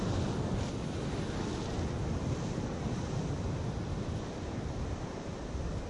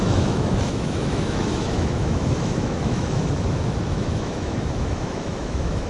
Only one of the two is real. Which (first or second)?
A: first